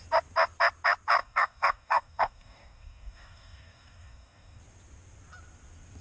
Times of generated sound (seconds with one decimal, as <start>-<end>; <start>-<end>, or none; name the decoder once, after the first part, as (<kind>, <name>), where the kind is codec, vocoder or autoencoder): 1.2-4.6 (codec, DAC)